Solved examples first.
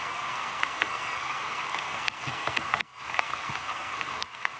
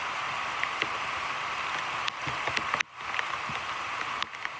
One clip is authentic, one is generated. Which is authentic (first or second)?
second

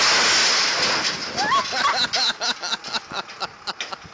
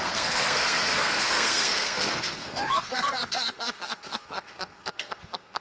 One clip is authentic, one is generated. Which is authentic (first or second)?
first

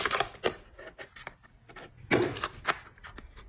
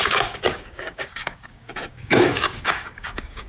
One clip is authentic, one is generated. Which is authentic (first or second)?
first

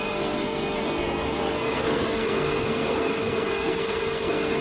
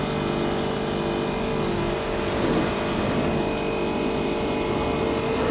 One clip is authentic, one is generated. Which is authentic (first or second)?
second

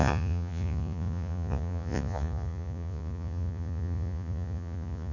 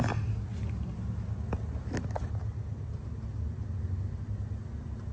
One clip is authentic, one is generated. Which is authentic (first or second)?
second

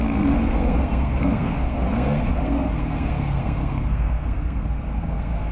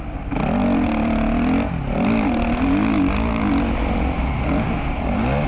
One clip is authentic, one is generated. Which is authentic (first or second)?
second